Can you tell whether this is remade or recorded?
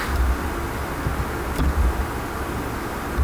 recorded